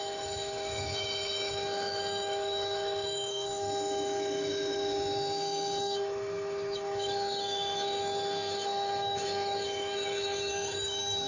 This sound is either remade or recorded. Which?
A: remade